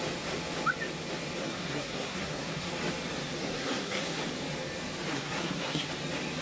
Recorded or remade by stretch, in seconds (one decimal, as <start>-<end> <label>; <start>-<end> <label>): 0.0-1.4 recorded; 1.4-2.7 remade; 2.7-3.4 recorded; 3.4-4.2 remade; 4.2-5.1 recorded; 5.1-5.9 remade; 5.9-6.4 recorded